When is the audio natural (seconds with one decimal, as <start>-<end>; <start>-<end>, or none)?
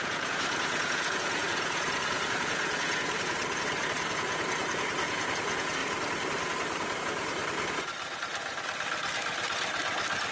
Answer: 3.4-4.1; 5.8-7.0; 7.4-10.3